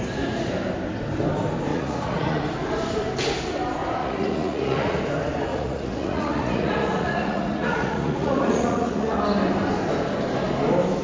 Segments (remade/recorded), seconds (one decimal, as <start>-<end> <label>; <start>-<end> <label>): 0.0-1.7 recorded; 1.7-2.4 remade; 2.4-4.0 recorded; 4.0-5.0 remade; 5.0-5.5 recorded; 5.5-9.2 remade; 9.2-11.0 recorded